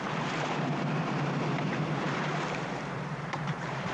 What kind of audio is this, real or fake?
fake